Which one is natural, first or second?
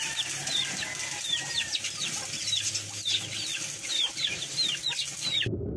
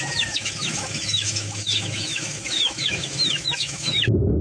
first